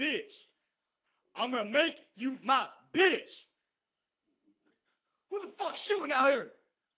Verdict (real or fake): fake